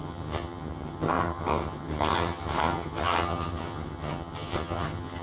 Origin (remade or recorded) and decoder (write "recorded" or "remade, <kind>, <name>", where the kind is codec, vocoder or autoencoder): remade, vocoder, HiFi-GAN